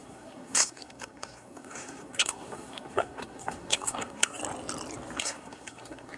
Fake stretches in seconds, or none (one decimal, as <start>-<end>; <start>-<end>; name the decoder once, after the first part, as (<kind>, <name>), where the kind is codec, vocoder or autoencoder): 0.0-4.4 (codec, SNAC); 5.2-6.2